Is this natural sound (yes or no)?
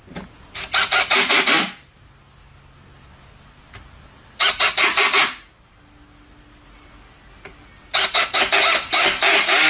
yes